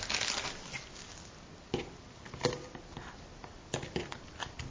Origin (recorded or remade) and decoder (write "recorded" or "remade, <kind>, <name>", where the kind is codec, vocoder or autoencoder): recorded